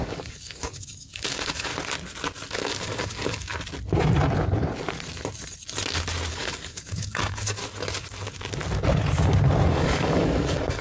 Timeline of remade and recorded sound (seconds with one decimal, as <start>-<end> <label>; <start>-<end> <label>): 0.0-1.7 remade; 1.7-2.5 recorded; 2.5-3.5 remade; 3.5-6.3 recorded; 6.3-7.6 remade; 7.6-9.7 recorded; 9.7-10.8 remade